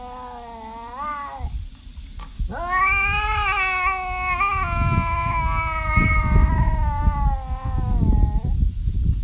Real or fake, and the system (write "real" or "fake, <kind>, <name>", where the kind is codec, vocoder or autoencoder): real